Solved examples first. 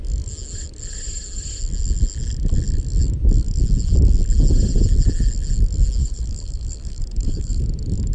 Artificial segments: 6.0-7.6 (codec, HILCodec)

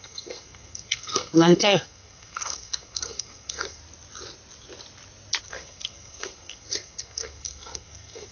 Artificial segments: 0.0-3.8 (codec, SNAC); 5.4-8.3

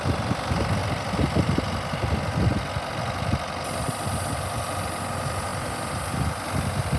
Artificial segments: none

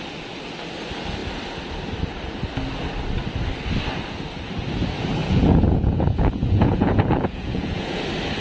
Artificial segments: 5.2-8.0 (vocoder, Vocos)

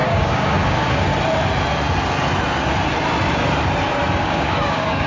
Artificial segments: 0.0-1.1 (codec, DAC); 4.2-5.1

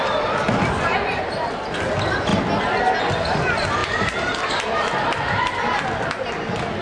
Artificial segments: none